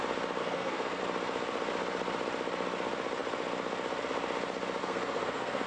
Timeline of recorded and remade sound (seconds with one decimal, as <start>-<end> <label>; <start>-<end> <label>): 0.0-0.4 recorded; 0.4-1.0 remade; 1.0-4.8 recorded; 4.8-5.7 remade